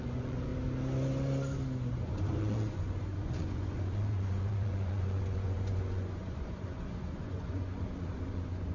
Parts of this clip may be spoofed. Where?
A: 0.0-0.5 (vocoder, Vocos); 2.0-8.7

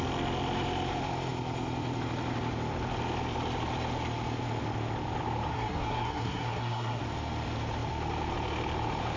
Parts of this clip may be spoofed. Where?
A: 5.5-7.0 (codec, SNAC)

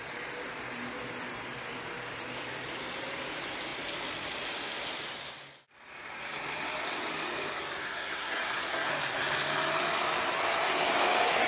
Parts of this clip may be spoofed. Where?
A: 7.8-8.9 (codec, SNAC)

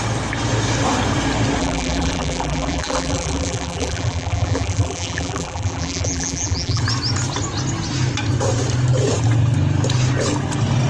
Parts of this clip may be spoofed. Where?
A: 1.6-6.8 (vocoder, BigVGAN v2)